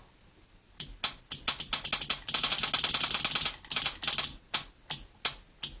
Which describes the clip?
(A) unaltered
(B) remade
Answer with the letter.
A